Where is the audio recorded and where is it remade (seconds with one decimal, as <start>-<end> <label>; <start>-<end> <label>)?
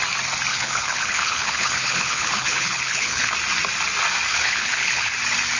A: 0.0-0.5 recorded; 0.5-3.3 remade; 3.3-4.3 recorded; 4.3-5.1 remade; 5.1-5.6 recorded